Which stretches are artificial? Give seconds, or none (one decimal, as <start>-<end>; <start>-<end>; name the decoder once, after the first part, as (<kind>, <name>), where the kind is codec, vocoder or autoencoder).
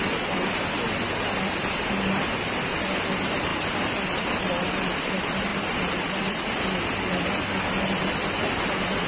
none